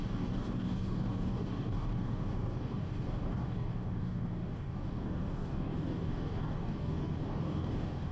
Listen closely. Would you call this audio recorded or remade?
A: remade